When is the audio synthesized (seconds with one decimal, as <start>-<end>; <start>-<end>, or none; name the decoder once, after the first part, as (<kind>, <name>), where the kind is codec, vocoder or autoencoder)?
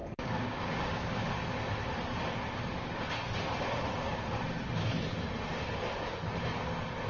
0.0-1.1 (codec, DAC)